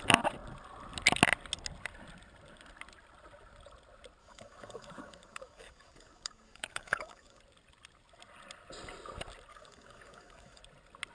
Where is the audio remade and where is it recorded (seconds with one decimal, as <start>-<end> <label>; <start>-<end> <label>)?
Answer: 0.0-4.2 recorded; 4.2-7.4 remade; 7.4-9.5 recorded; 9.5-10.6 remade; 10.6-11.1 recorded